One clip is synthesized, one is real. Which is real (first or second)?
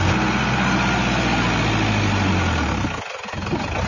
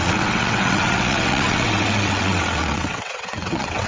first